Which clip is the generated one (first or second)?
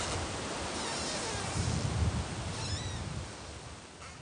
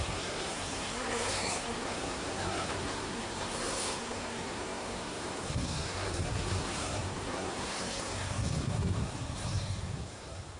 second